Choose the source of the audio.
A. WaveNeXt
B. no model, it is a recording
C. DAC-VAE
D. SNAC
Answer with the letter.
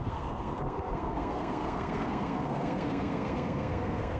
D